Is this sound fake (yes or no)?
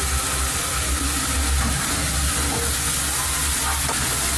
no